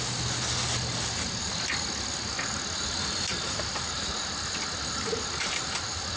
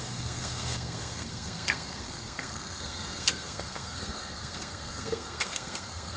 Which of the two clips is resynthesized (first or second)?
second